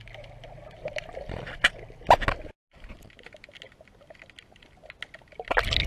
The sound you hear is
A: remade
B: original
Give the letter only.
B